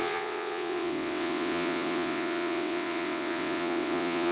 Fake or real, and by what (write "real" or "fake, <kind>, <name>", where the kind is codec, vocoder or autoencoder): fake, vocoder, WaveNeXt